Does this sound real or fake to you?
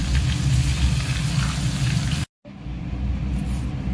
real